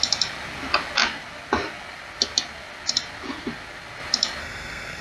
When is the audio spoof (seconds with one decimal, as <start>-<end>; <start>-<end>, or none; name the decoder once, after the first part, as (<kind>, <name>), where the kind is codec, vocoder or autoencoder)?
4.4-5.0 (codec, SNAC)

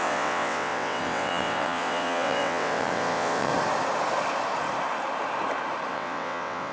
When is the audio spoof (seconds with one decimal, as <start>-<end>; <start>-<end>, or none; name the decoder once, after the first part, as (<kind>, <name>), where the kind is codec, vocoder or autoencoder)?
0.0-3.5 (vocoder, WaveNeXt); 5.9-6.7